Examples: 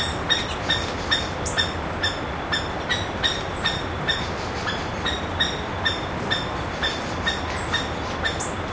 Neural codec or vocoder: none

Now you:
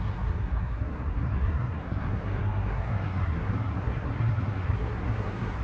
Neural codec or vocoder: codec, SNAC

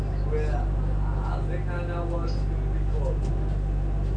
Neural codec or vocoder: none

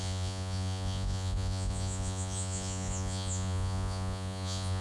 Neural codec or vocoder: vocoder, Vocos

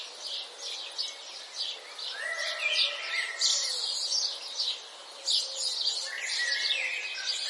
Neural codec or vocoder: none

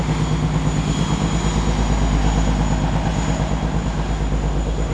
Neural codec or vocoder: none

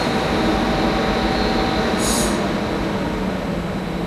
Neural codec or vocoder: none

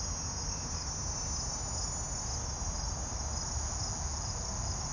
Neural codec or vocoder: none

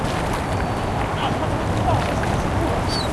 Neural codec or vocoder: none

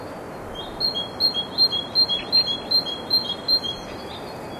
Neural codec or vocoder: none